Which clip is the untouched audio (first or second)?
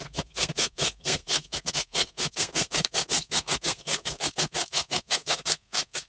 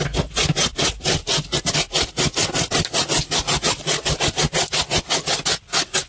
second